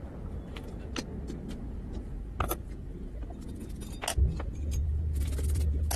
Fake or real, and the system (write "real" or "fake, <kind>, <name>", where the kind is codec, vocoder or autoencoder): real